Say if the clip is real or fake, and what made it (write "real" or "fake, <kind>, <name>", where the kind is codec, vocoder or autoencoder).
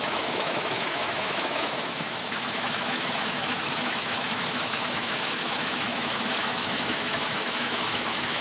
fake, autoencoder, DAC-VAE